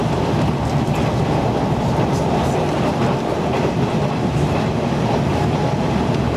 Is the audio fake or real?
real